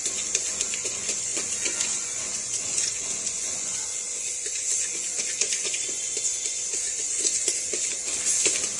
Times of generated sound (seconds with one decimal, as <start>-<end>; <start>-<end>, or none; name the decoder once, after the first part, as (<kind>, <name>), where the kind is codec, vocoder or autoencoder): 0.0-8.0 (vocoder, Vocos)